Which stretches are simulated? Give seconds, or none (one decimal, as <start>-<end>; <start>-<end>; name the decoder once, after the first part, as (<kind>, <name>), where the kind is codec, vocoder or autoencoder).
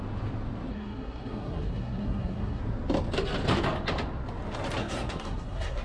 0.7-2.6 (codec, SNAC); 4.8-5.8